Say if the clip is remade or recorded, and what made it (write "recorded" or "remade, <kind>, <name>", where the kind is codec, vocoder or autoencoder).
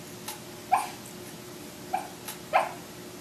recorded